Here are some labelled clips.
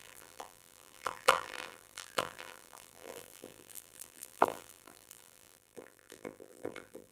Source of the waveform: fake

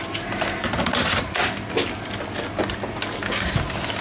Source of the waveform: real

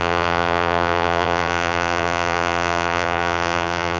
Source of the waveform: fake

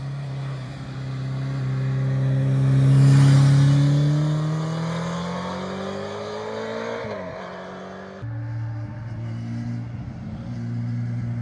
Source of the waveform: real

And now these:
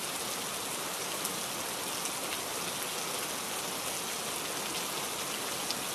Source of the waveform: real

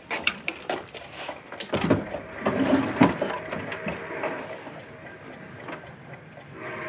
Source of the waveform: fake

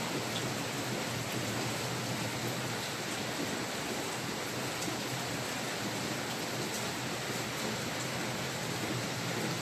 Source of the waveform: real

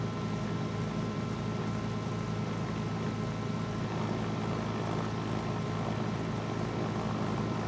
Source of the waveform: real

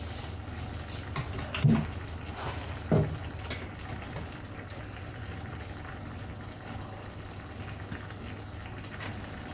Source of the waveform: real